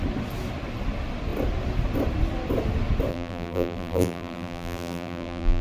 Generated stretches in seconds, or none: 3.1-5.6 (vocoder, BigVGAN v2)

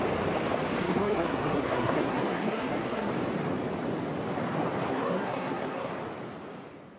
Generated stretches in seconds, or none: 0.7-3.1 (codec, SNAC); 4.9-5.9

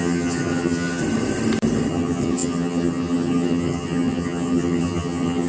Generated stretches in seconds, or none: 0.0-1.0 (vocoder, HiFi-GAN); 1.9-5.5

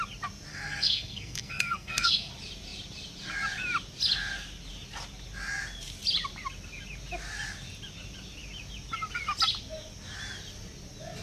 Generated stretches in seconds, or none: 0.5-2.3 (codec, SNAC)

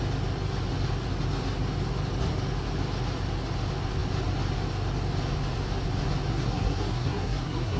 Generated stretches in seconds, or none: 6.3-7.8 (codec, SNAC)